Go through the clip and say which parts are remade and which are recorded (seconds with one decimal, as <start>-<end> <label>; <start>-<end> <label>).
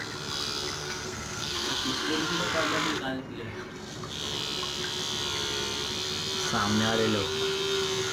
0.0-0.8 recorded; 0.8-2.4 remade; 2.4-8.1 recorded